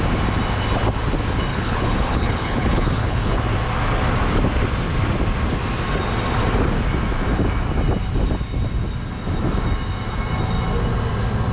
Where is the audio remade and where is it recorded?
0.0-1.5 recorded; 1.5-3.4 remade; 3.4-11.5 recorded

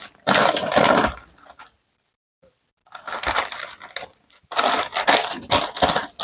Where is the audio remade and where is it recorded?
0.0-6.2 recorded

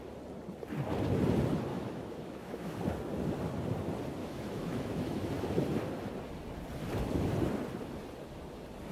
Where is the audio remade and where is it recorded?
0.0-1.7 recorded; 1.7-2.8 remade; 2.8-4.2 recorded; 4.2-5.3 remade; 5.3-8.9 recorded